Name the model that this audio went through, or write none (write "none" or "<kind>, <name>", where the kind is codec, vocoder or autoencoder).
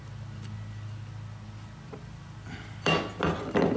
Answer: none